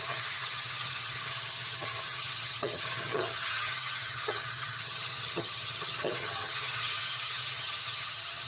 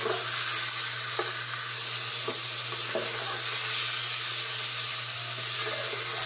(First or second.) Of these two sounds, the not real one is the first